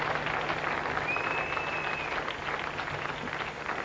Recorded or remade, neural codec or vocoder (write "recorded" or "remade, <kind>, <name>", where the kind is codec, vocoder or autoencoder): recorded